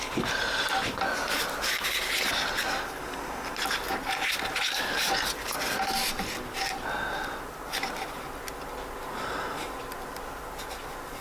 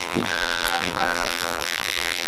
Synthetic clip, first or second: second